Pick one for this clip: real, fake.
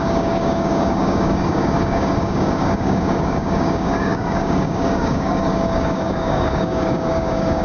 fake